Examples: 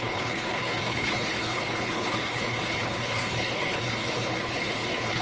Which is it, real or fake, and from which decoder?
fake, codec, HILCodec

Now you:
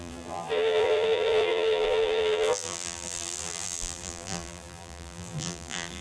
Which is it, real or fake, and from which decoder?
fake, vocoder, BigVGAN v2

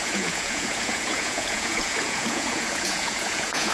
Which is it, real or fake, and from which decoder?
fake, vocoder, Vocos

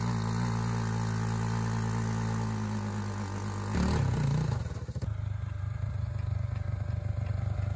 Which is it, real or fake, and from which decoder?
real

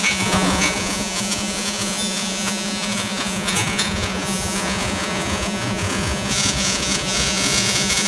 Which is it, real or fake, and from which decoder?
fake, vocoder, Vocos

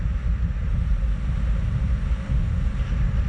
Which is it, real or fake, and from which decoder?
real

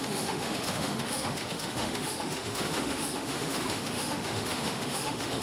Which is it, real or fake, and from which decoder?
fake, autoencoder, DAC-VAE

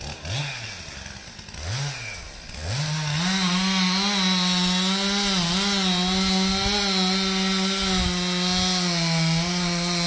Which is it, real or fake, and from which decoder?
real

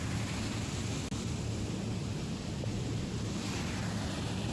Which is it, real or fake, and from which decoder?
real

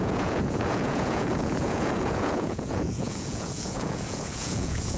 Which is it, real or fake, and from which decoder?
fake, vocoder, Vocos